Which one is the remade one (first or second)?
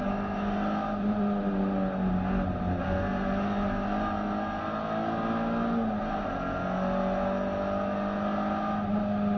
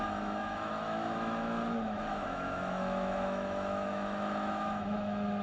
second